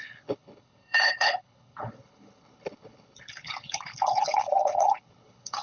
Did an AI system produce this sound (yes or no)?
yes